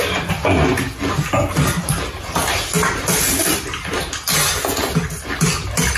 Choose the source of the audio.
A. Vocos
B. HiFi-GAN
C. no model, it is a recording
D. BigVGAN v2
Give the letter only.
C